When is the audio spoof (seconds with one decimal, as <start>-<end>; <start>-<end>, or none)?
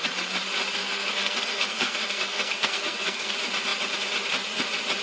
0.8-3.3